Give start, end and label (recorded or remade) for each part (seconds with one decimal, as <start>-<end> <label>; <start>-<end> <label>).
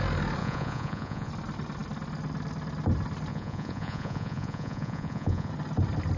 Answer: 0.0-0.4 recorded; 0.4-1.3 remade; 1.3-3.3 recorded; 3.3-5.5 remade; 5.5-6.2 recorded